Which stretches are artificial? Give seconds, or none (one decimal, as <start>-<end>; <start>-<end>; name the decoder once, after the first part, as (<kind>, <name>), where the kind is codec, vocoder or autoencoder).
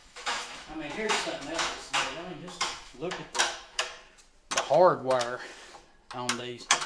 0.0-3.9 (autoencoder, DAC-VAE); 4.6-5.5; 6.4-6.9